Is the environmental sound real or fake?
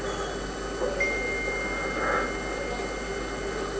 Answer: real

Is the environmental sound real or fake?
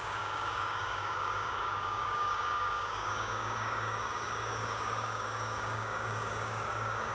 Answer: fake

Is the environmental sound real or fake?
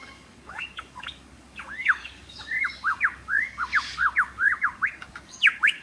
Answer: fake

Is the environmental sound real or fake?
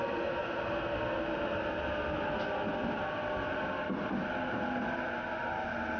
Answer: real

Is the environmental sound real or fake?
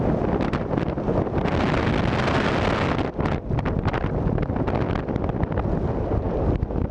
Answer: real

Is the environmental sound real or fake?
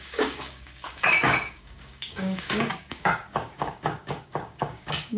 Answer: fake